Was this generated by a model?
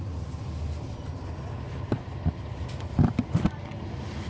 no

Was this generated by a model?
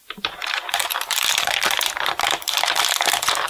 yes